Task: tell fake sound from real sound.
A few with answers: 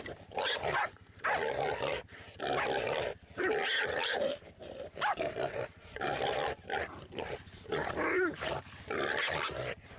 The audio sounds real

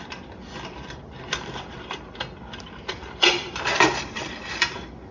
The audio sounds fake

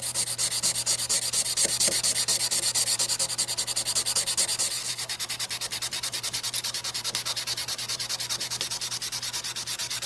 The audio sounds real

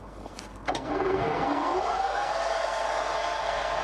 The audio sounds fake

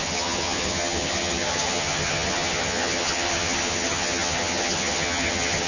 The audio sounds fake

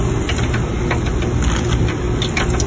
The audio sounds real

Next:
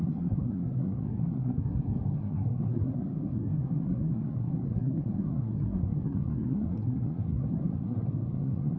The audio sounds fake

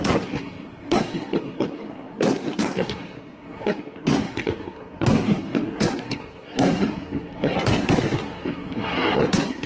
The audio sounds fake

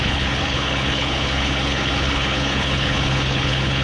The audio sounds fake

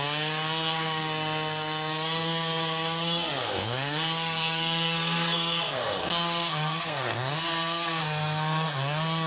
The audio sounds fake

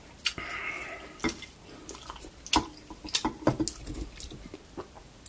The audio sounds real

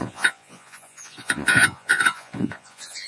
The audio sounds fake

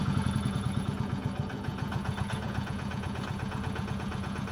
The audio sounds fake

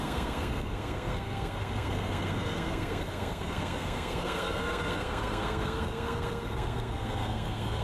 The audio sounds fake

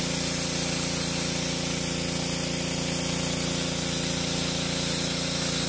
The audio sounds real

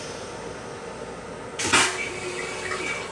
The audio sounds real